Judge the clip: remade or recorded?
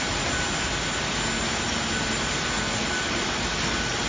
recorded